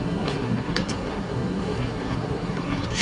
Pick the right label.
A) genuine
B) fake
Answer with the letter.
B